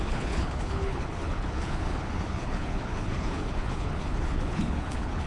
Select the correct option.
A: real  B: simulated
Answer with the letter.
B